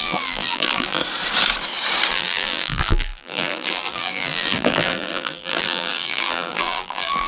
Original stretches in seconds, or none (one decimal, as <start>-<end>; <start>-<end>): 1.0-2.1